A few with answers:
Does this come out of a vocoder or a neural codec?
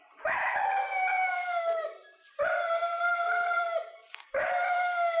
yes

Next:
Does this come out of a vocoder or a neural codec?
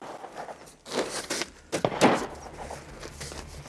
no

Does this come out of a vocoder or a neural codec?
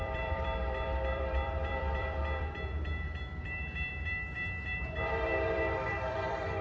yes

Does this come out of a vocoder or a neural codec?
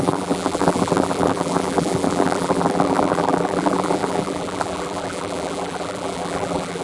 yes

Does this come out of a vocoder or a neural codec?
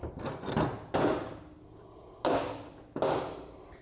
no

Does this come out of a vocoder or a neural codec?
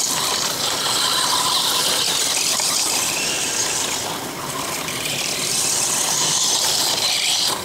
yes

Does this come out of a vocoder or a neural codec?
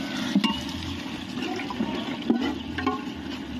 no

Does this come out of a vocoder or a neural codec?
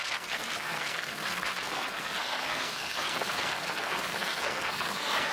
yes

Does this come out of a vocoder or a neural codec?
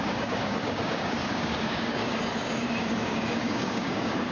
yes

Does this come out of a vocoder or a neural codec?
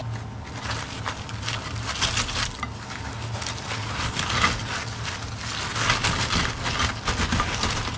no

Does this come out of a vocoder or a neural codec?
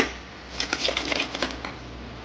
yes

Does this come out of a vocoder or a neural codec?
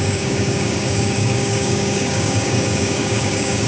yes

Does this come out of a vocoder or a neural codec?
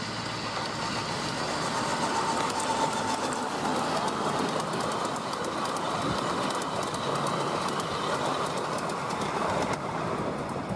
no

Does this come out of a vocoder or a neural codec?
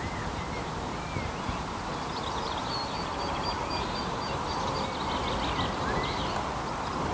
no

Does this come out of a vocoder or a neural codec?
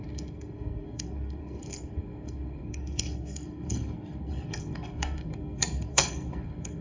yes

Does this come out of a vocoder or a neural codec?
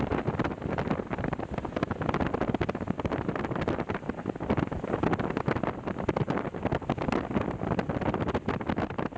no